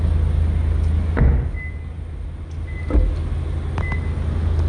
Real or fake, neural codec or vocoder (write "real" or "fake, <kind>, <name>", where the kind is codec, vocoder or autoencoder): real